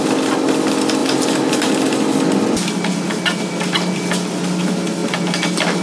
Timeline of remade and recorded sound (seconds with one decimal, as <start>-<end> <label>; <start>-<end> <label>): 0.0-1.0 recorded; 1.0-1.7 remade; 1.7-5.8 recorded